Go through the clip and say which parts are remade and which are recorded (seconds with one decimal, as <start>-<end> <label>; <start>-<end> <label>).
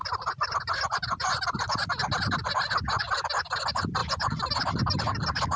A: 0.0-5.6 recorded